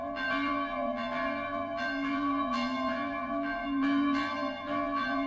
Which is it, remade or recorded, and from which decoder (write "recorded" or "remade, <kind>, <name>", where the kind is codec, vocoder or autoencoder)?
remade, vocoder, BigVGAN v2